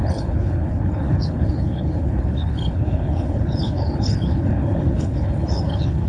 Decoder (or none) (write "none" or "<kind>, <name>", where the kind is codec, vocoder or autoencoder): codec, HILCodec